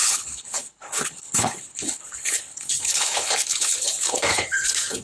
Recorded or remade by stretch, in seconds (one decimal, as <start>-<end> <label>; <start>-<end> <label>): 0.0-5.0 remade